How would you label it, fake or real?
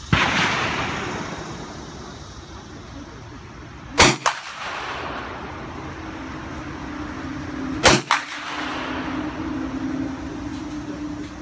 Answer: real